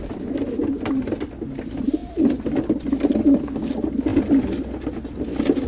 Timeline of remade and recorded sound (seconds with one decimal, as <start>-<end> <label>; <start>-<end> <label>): 0.0-2.0 recorded; 2.0-3.4 remade; 3.4-5.7 recorded